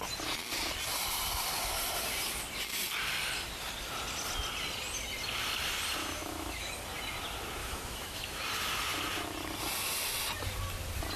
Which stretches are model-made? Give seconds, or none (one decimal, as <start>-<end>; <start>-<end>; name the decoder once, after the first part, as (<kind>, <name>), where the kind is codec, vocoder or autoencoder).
6.0-6.7 (autoencoder, DAC-VAE); 7.6-8.4